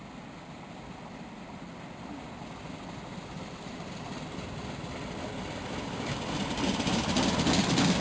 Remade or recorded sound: recorded